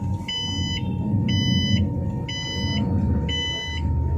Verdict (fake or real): real